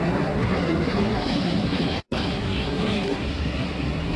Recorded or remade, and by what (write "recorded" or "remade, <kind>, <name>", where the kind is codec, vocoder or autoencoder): remade, codec, SNAC